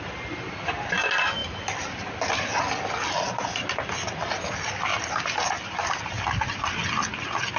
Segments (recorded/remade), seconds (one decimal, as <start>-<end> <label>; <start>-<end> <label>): 0.0-7.6 recorded